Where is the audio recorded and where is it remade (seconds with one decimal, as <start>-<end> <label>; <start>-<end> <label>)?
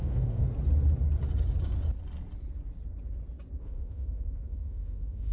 0.0-0.4 remade; 0.4-3.6 recorded; 3.6-5.3 remade